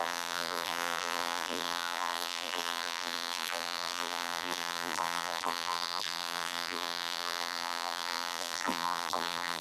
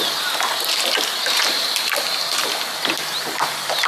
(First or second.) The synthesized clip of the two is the first